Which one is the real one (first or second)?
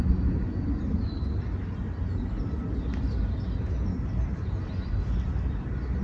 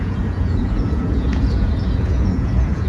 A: first